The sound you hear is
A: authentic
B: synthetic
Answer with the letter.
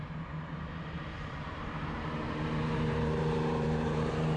B